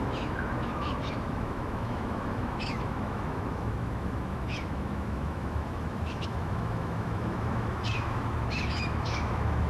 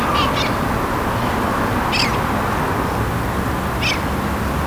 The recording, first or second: second